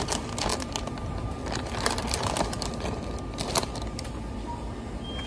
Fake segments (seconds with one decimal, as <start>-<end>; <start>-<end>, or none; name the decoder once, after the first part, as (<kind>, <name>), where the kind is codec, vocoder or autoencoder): 0.5-3.2 (vocoder, BigVGAN v2)